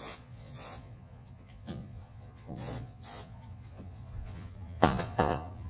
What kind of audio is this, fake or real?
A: fake